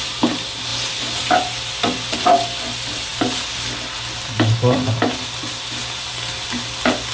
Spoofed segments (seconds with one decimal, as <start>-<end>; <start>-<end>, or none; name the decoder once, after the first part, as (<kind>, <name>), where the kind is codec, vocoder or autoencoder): 0.7-1.3 (vocoder, BigVGAN v2)